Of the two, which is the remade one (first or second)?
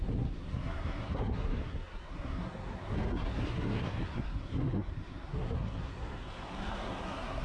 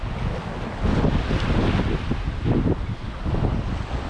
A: first